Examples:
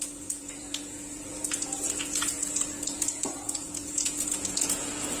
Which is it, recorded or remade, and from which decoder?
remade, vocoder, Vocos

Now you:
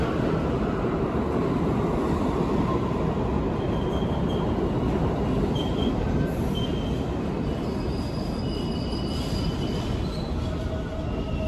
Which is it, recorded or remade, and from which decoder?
recorded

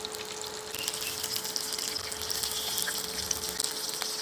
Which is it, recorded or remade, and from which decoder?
recorded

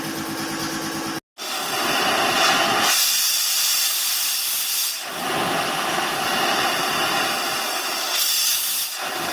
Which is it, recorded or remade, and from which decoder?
recorded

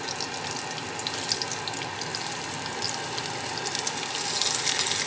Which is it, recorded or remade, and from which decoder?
recorded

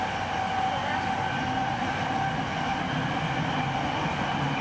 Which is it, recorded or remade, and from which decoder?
recorded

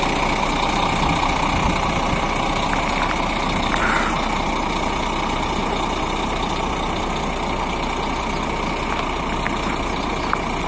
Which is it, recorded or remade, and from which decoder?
recorded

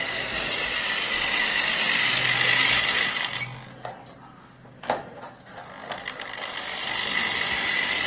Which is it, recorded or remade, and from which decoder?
recorded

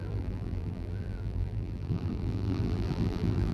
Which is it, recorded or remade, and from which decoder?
remade, vocoder, BigVGAN v2